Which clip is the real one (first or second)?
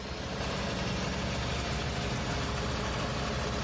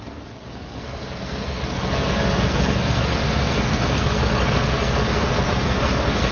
first